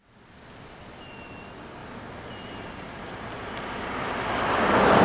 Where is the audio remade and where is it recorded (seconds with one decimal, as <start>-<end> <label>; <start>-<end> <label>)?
0.0-1.8 recorded; 1.8-5.0 remade